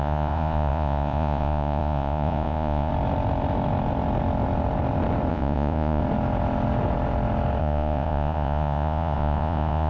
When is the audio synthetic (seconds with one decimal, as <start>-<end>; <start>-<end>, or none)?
0.0-2.9; 5.3-6.0; 7.6-9.9